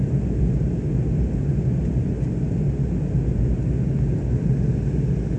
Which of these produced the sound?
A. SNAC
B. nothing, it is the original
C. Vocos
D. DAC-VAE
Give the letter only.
B